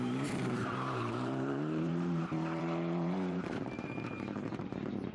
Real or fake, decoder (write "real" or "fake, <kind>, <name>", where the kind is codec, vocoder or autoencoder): fake, vocoder, BigVGAN v2